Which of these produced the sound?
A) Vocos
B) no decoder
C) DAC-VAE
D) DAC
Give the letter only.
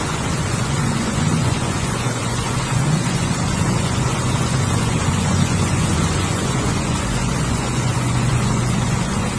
A